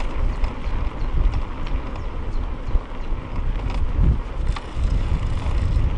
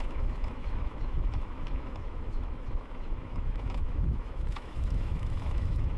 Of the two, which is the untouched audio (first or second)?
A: first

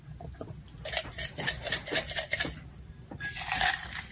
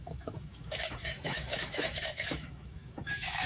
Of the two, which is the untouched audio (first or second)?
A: first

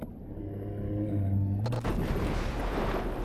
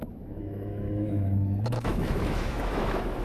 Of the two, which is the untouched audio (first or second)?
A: first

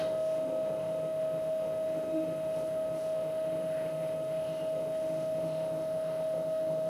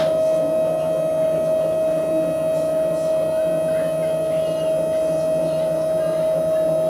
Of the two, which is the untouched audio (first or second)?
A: second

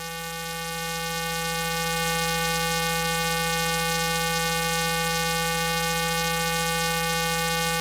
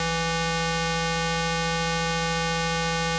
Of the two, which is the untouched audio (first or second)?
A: second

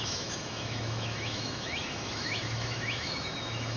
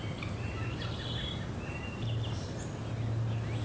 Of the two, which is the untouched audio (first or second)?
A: second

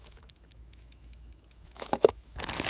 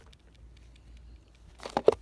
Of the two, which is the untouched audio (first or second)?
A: second